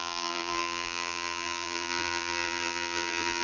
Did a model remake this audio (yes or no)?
yes